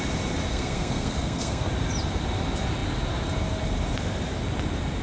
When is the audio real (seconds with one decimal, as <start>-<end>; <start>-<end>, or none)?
0.0-0.5; 1.7-5.0